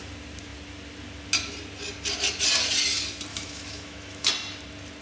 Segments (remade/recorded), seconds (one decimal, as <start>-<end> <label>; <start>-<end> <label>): 0.0-3.3 recorded; 3.3-4.3 remade; 4.3-5.0 recorded